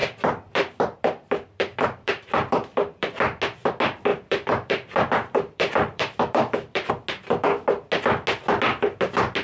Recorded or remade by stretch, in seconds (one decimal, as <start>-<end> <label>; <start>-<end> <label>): 0.0-3.4 remade; 3.4-4.1 recorded; 4.1-6.9 remade; 6.9-9.4 recorded